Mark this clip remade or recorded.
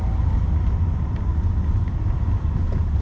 recorded